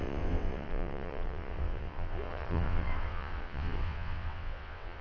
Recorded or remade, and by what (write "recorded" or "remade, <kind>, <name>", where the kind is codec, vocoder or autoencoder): remade, vocoder, WaveNeXt